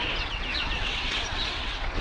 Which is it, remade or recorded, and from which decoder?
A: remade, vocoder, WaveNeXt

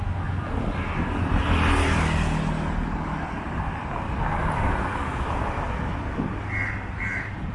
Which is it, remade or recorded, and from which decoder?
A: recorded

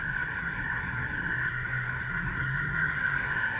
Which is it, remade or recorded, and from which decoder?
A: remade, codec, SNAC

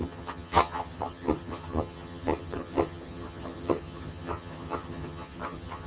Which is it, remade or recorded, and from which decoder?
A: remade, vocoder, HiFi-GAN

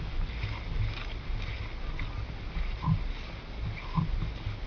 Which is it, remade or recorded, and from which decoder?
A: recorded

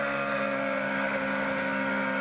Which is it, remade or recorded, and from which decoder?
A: remade, codec, DAC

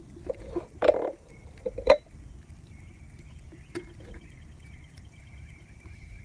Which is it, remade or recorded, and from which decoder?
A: remade, vocoder, BigVGAN v2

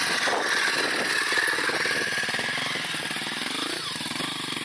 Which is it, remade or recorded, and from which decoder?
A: recorded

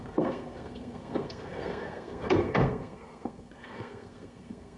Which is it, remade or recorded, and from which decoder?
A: remade, codec, SNAC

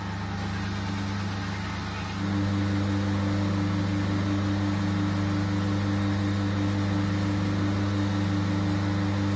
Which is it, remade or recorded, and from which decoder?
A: recorded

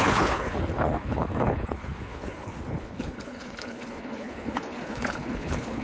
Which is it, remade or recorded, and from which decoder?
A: remade, codec, HILCodec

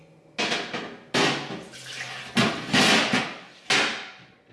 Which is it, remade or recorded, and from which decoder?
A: recorded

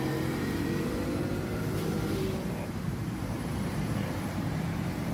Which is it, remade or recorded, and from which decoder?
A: remade, vocoder, BigVGAN v2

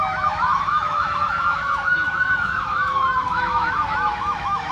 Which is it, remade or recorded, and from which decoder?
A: remade, autoencoder, DAC-VAE